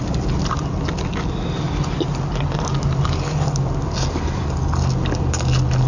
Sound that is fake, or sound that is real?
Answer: real